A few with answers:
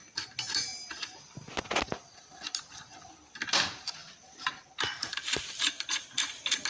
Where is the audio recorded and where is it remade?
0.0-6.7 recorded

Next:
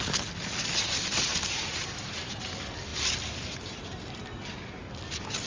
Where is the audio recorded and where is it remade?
0.0-1.3 recorded; 1.3-2.5 remade; 2.5-2.9 recorded; 2.9-4.2 remade; 4.2-5.5 recorded

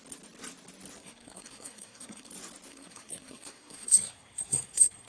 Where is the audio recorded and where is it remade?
0.0-1.0 recorded; 1.0-2.3 remade; 2.3-2.7 recorded; 2.7-5.1 remade

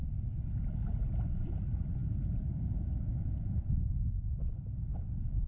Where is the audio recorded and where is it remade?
0.0-5.5 recorded

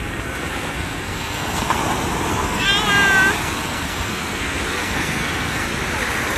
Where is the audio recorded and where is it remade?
0.0-1.8 remade; 1.8-2.3 recorded; 2.3-2.7 remade; 2.7-3.4 recorded; 3.4-5.7 remade; 5.7-6.4 recorded